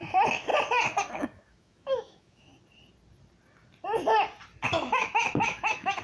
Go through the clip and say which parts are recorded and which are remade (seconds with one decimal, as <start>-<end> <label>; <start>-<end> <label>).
0.0-0.5 remade; 0.5-1.1 recorded; 1.1-2.5 remade; 2.5-4.8 recorded; 4.8-6.0 remade